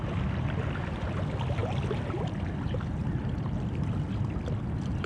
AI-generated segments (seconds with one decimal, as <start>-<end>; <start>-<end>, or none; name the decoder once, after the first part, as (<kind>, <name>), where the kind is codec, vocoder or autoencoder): none

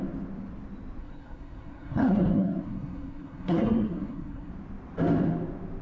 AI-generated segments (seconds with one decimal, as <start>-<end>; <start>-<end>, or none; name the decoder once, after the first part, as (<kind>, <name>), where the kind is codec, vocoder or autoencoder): 1.0-4.5 (codec, SNAC)

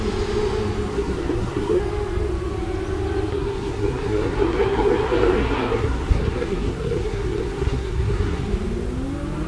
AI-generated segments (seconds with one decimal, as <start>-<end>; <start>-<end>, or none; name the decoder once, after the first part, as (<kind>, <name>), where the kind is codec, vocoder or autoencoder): 0.9-1.8 (codec, SNAC); 3.3-8.5

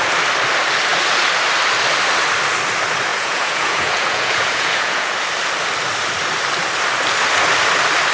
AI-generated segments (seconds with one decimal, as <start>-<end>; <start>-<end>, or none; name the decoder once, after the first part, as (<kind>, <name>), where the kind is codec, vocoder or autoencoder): 3.1-5.1 (vocoder, Vocos)

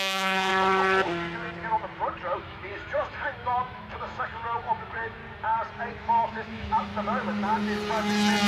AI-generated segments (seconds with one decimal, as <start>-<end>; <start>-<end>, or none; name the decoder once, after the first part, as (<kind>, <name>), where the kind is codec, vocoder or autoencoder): 0.0-0.5 (autoencoder, DAC-VAE); 2.4-5.2; 6.0-6.9

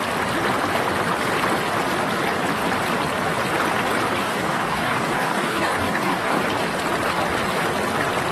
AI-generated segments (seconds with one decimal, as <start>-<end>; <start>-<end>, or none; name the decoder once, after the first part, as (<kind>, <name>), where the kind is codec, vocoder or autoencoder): 4.2-6.4 (codec, DAC)

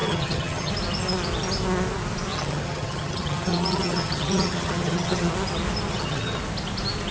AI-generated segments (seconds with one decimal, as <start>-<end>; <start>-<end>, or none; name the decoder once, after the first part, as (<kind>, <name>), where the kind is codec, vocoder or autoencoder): 0.0-0.7 (vocoder, HiFi-GAN); 2.3-5.3; 5.9-6.4